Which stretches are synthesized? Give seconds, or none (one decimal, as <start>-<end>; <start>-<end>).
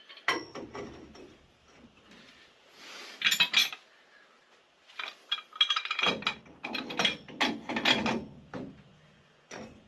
8.9-9.9